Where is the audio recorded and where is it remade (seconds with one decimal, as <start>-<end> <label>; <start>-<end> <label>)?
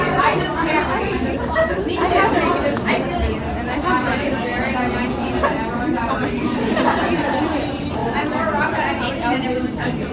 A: 0.0-4.5 remade; 4.5-5.8 recorded; 5.8-8.0 remade; 8.0-9.1 recorded; 9.1-10.1 remade